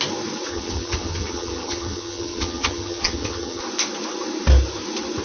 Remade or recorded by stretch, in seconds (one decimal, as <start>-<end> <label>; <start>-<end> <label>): 0.0-0.5 recorded; 0.5-3.6 remade; 3.6-5.2 recorded